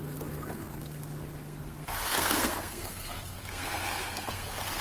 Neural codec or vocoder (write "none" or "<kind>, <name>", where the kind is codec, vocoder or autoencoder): codec, SNAC